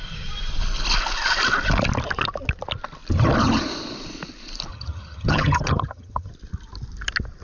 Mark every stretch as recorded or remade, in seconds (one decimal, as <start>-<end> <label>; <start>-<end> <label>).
0.0-4.7 recorded; 4.7-6.3 remade; 6.3-7.4 recorded